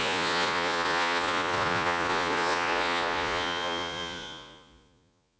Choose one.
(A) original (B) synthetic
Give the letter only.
B